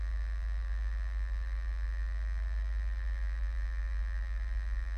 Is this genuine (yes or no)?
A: no